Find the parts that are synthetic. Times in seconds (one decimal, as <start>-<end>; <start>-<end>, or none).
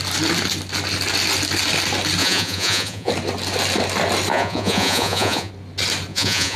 2.2-3.1; 4.3-5.5; 6.1-6.6